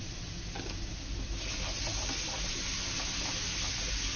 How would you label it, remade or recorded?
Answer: recorded